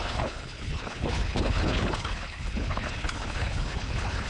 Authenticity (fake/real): fake